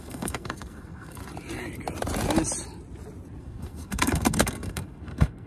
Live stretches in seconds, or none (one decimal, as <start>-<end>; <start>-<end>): 1.2-3.4